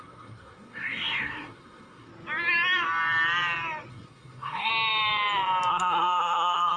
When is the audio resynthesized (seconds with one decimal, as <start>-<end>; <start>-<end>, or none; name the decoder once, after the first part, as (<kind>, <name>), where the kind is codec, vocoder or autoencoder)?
0.0-2.1 (codec, SNAC); 3.9-4.7; 5.7-6.8